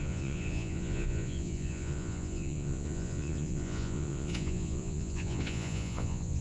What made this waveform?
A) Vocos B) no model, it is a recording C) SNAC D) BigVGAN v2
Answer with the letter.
A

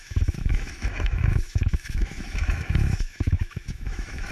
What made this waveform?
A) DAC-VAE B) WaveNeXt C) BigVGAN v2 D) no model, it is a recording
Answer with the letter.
A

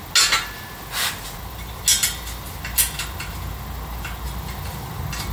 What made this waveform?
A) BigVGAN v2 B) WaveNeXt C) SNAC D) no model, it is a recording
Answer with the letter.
D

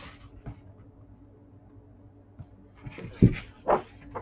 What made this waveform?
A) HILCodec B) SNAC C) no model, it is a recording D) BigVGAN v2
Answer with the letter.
C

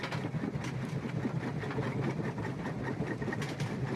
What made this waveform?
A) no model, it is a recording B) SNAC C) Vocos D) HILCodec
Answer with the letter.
A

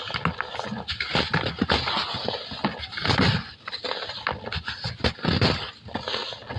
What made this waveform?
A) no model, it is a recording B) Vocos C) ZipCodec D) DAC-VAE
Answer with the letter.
A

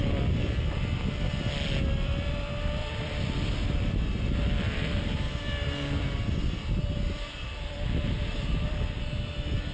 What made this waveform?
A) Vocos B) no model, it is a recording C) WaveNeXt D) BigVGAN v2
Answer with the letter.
D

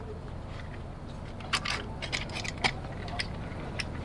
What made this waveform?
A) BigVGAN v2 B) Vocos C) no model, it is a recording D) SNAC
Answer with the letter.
C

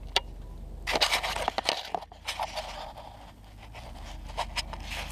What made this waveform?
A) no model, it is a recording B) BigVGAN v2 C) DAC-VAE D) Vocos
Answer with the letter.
A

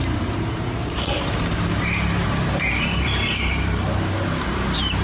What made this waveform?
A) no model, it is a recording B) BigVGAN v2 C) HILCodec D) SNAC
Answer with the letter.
B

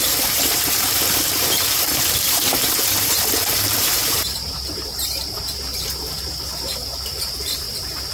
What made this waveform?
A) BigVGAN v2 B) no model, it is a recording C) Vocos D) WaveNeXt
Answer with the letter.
A